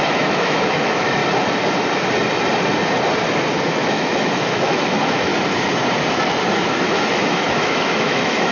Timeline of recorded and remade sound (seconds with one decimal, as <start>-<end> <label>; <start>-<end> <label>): 0.0-1.2 remade; 1.2-3.9 recorded; 3.9-5.3 remade; 5.3-6.6 recorded; 6.6-8.5 remade